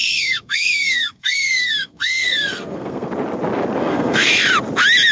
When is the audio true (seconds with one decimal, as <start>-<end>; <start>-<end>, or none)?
3.1-3.8; 4.3-5.1